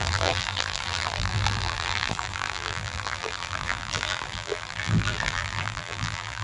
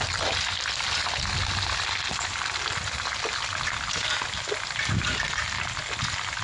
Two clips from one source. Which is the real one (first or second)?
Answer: second